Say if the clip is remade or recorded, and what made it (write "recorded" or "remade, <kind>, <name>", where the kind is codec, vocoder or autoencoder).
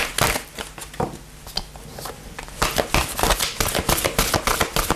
recorded